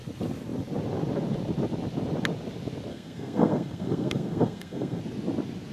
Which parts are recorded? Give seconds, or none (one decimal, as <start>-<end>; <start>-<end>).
0.0-2.9; 5.0-5.7